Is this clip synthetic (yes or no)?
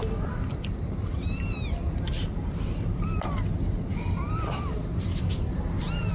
no